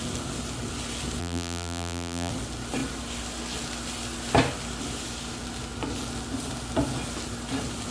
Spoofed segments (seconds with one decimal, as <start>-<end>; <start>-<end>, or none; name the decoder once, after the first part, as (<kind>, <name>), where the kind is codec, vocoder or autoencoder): 1.2-2.3 (vocoder, BigVGAN v2)